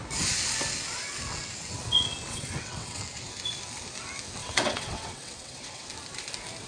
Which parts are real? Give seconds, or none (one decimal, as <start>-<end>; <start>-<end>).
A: 0.0-2.3; 3.0-4.4; 5.9-6.7